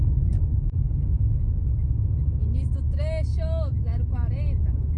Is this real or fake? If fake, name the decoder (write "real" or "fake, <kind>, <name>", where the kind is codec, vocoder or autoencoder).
real